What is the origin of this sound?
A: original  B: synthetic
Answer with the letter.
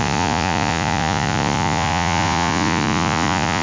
B